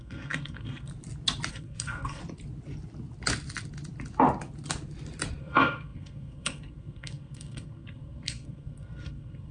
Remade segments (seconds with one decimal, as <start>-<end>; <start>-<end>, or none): 0.0-0.9; 1.5-2.2; 5.4-9.5